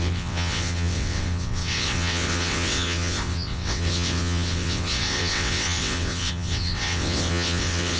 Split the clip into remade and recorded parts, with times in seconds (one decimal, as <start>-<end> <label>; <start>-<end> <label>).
0.0-8.0 remade